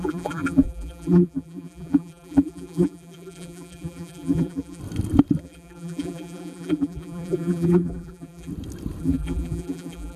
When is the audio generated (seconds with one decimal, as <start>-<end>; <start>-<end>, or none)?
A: 0.0-4.8; 5.4-8.5; 9.0-10.2